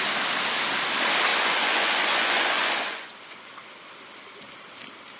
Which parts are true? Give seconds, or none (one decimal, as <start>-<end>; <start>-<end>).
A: 0.0-1.3; 3.5-5.2